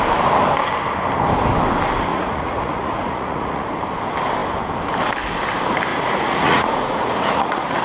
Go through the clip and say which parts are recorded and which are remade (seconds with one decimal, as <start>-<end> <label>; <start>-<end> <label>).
0.0-2.1 recorded; 2.1-3.7 remade; 3.7-5.9 recorded; 5.9-7.8 remade